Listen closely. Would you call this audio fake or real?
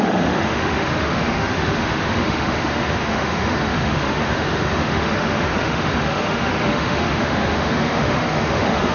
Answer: fake